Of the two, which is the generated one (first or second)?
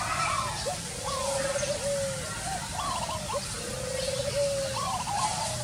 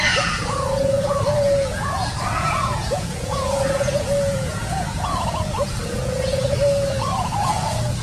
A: second